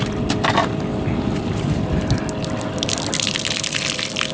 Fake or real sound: real